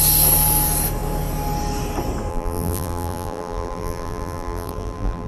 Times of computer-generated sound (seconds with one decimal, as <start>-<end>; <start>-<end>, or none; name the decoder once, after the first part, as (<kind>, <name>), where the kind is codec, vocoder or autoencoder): 2.3-5.3 (vocoder, BigVGAN v2)